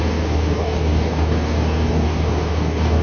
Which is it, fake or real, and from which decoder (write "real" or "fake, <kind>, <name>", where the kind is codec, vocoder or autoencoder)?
fake, codec, DAC